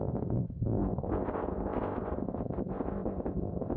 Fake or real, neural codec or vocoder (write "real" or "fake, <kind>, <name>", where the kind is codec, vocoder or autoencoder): fake, codec, ZipCodec